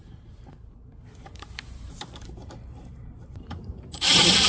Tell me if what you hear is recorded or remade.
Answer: remade